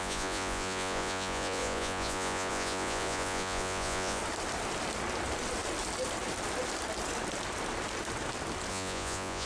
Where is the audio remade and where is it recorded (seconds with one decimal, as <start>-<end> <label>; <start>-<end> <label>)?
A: 0.0-4.2 remade; 4.2-8.7 recorded; 8.7-9.5 remade